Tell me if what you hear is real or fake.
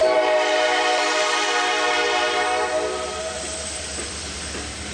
fake